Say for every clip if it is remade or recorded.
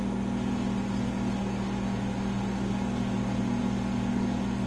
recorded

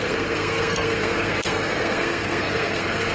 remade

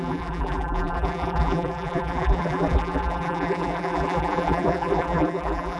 remade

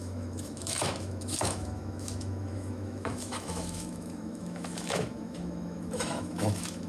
remade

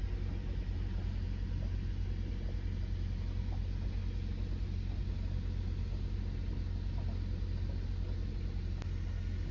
recorded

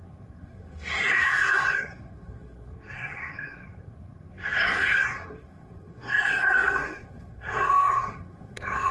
remade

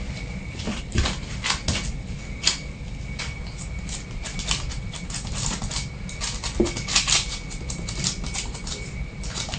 recorded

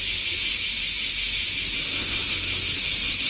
recorded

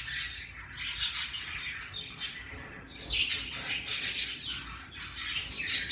recorded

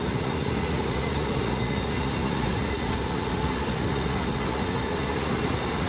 remade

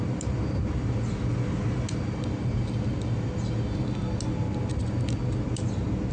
recorded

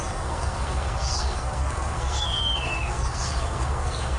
remade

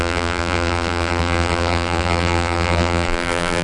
remade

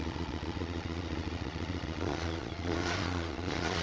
remade